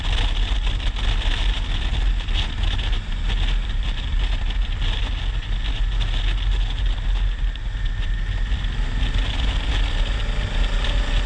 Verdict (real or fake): real